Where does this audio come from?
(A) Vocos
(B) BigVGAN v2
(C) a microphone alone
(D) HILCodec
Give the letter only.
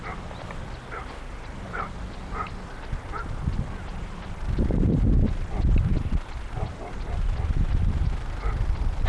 B